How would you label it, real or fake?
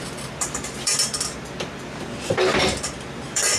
fake